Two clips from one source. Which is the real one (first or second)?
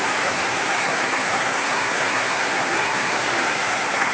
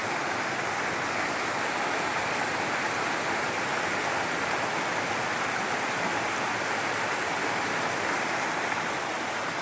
second